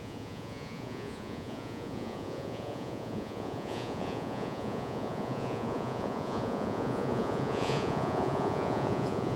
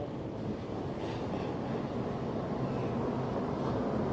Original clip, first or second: second